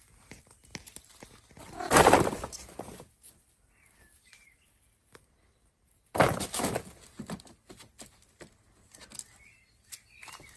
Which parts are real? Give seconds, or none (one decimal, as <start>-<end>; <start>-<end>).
0.0-10.6